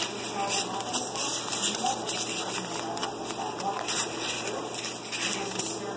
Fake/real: real